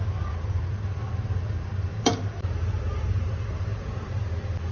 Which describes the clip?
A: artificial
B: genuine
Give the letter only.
A